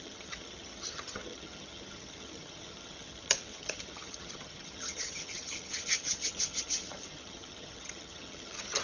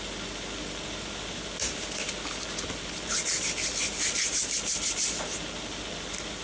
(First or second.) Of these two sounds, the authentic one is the second